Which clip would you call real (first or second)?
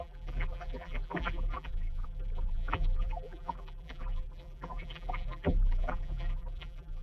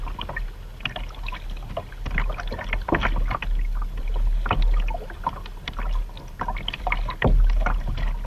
second